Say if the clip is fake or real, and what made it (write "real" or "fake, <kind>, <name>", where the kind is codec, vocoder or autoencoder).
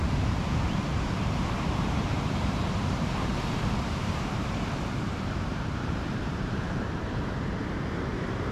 fake, vocoder, BigVGAN v2